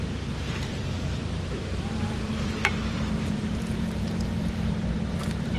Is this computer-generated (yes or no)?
yes